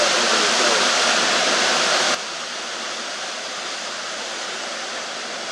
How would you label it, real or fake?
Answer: fake